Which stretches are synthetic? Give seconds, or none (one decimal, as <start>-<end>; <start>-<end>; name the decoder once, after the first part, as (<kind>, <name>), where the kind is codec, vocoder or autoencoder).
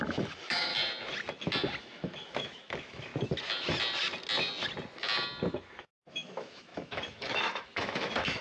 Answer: 0.0-0.7 (autoencoder, DAC-VAE); 1.8-3.1; 5.5-8.4